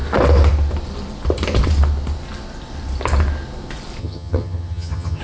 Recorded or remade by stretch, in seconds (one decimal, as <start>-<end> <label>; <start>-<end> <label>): 0.0-4.0 recorded; 4.0-5.2 remade